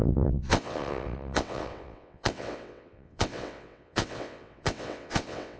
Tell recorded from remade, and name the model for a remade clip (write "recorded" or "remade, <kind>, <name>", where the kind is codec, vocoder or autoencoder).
remade, vocoder, WaveNeXt